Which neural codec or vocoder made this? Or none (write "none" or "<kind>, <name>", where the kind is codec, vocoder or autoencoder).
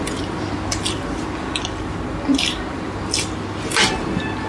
none